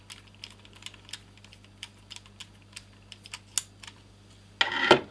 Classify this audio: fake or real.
real